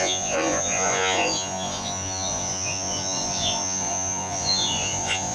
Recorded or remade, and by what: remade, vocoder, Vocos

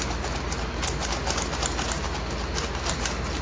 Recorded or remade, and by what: recorded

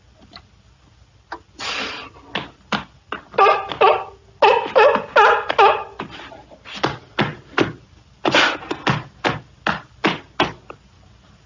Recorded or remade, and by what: recorded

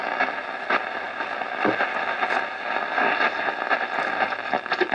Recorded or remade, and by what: recorded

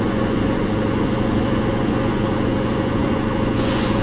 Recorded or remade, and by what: remade, vocoder, Vocos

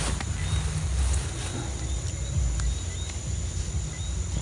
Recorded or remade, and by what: recorded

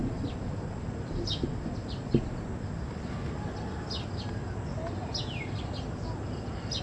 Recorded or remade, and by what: recorded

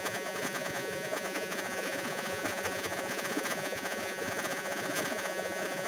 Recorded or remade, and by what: remade, vocoder, Vocos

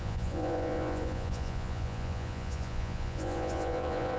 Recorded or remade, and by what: remade, vocoder, Vocos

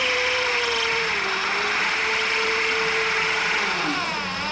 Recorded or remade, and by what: recorded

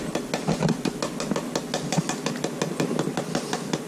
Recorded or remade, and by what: recorded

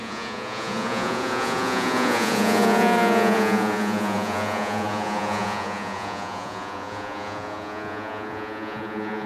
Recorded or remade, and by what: remade, vocoder, Vocos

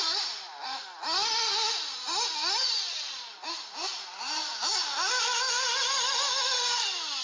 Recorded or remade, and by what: recorded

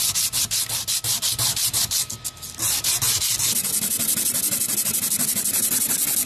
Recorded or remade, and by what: recorded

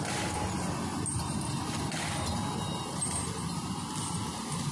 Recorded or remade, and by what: recorded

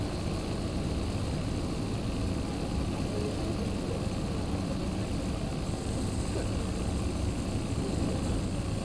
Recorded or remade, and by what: recorded